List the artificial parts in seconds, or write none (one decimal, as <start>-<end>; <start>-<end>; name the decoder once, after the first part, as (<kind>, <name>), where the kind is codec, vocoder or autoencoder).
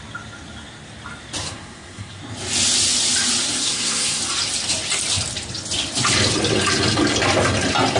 1.4-2.2 (codec, SNAC); 3.6-4.2